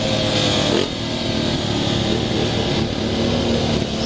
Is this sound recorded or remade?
recorded